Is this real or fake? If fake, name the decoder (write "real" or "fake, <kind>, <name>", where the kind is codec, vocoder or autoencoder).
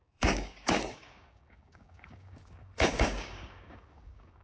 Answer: fake, codec, DAC